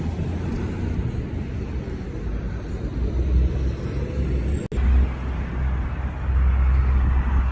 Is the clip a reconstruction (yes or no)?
no